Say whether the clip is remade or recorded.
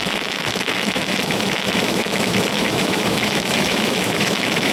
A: remade